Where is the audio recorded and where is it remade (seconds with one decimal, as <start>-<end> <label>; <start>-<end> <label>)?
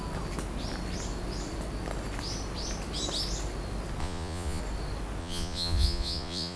0.0-4.0 recorded; 4.0-4.6 remade; 4.6-5.2 recorded; 5.2-6.6 remade